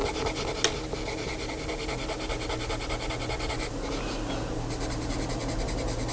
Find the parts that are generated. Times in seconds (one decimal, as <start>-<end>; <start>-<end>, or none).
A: none